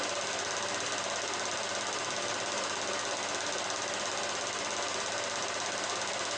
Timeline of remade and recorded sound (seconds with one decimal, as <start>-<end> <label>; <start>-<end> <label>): 0.0-6.4 recorded